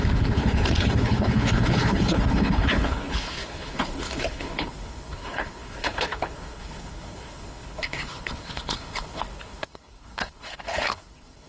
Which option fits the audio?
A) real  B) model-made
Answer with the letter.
B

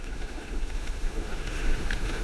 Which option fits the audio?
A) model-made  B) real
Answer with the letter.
A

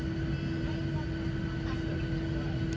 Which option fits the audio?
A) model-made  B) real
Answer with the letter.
B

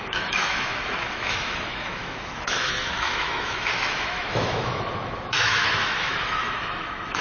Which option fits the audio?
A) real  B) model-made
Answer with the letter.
B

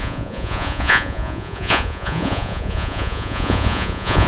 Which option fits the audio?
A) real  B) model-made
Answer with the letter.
B